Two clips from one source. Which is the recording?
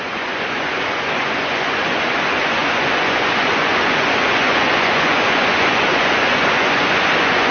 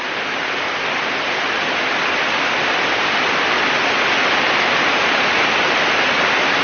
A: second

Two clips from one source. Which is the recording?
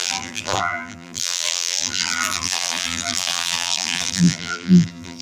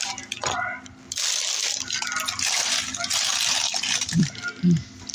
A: second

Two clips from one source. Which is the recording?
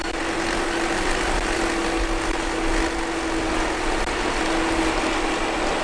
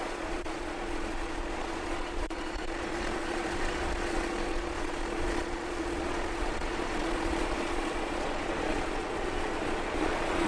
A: first